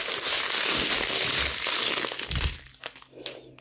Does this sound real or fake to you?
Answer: real